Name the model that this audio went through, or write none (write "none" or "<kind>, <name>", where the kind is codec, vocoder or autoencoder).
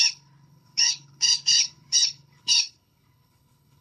codec, HILCodec